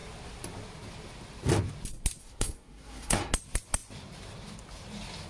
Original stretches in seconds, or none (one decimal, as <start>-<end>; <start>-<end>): 0.0-2.2; 3.2-5.3